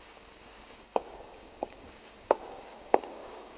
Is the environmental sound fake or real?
fake